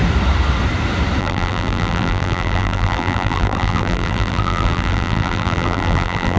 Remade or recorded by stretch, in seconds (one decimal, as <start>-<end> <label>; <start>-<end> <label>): 0.0-1.2 recorded; 1.2-6.4 remade

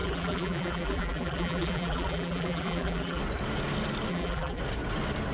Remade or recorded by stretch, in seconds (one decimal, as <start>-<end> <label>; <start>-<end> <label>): 0.0-3.2 remade; 3.2-4.1 recorded; 4.1-4.6 remade; 4.6-5.3 recorded

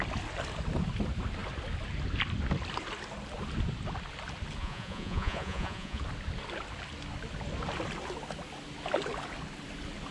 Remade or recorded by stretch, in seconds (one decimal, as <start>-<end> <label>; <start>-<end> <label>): 0.0-4.6 recorded; 4.6-6.0 remade; 6.0-10.1 recorded

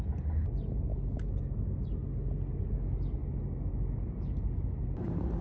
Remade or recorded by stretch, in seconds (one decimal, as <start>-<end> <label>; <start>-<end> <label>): 0.0-5.4 recorded

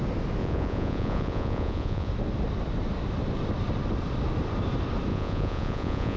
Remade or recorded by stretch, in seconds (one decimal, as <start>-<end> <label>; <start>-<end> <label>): 0.0-0.4 recorded; 0.4-2.1 remade; 2.1-5.1 recorded; 5.1-6.2 remade

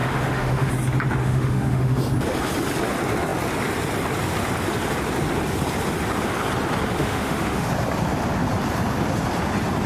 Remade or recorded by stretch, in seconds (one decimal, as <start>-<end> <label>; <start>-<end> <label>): 0.0-0.7 remade; 0.7-1.2 recorded; 1.2-2.0 remade; 2.0-7.0 recorded; 7.0-7.7 remade; 7.7-9.9 recorded